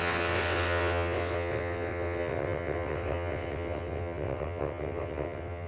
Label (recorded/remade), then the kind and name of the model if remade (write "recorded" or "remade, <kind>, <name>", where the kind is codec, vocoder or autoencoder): remade, vocoder, WaveNeXt